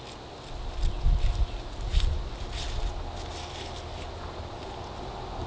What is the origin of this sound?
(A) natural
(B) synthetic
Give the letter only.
A